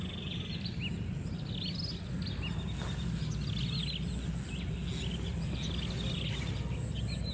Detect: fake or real real